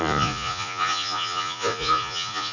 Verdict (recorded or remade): remade